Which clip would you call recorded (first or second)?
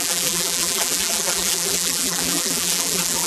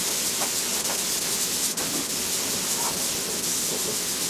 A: second